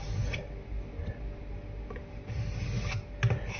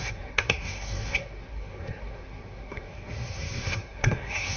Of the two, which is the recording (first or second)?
first